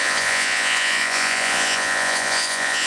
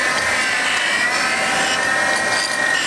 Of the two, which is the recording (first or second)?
second